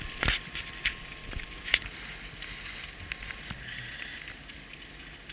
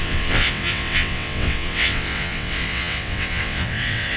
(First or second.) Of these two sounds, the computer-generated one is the second